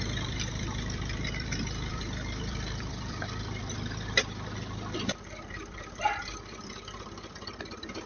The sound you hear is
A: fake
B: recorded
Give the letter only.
A